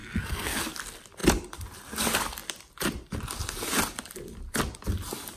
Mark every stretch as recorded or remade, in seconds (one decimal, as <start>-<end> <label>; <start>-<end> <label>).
0.0-0.6 remade; 0.6-5.4 recorded